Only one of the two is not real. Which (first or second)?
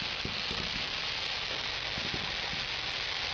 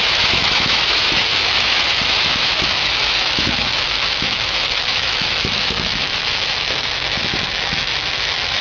second